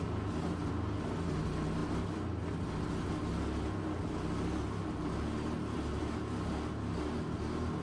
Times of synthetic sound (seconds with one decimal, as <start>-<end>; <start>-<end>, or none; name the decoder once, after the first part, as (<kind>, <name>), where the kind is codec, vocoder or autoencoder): none